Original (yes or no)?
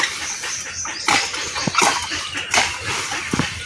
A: no